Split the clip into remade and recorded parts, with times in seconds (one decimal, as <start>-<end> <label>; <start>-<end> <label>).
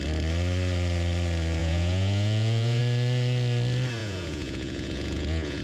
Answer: 0.0-1.6 recorded; 1.6-2.8 remade; 2.8-4.0 recorded; 4.0-5.6 remade